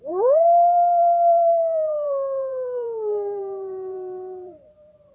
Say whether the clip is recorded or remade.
remade